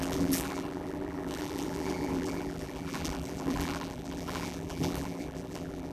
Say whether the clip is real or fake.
fake